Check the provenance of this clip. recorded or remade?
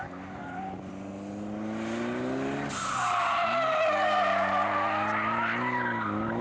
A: recorded